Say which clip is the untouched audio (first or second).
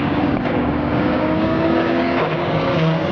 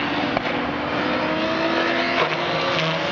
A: second